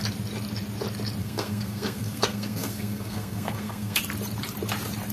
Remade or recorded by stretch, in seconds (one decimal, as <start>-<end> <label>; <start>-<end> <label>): 0.0-1.2 recorded; 1.2-4.0 remade; 4.0-5.1 recorded